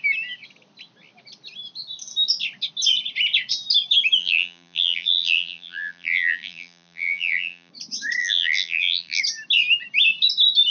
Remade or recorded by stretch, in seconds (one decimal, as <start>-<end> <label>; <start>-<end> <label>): 0.0-4.2 recorded; 4.2-7.7 remade; 7.7-8.2 recorded; 8.2-9.2 remade; 9.2-10.7 recorded